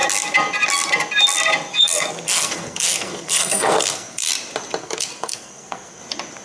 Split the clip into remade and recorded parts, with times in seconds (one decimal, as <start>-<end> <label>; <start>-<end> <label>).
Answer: 0.0-1.7 recorded; 1.7-4.3 remade; 4.3-4.8 recorded; 4.8-6.0 remade; 6.0-6.4 recorded